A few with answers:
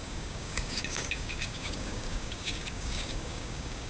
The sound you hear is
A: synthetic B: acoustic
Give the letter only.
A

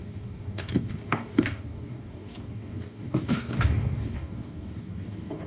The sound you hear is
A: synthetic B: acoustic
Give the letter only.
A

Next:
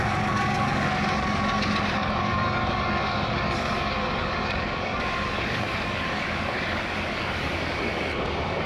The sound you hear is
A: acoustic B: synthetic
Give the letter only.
B